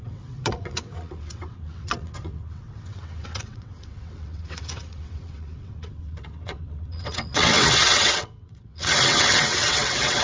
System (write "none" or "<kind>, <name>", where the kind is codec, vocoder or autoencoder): vocoder, WaveNeXt